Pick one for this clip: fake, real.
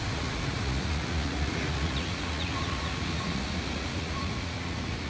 fake